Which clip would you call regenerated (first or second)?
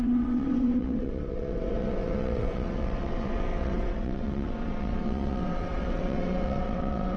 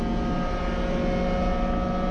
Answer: first